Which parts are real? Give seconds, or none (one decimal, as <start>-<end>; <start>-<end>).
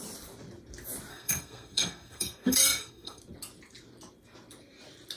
0.0-1.1; 3.2-5.2